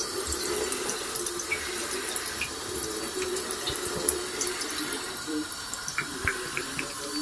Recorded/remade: remade